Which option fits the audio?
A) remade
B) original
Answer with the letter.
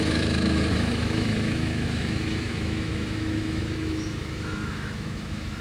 A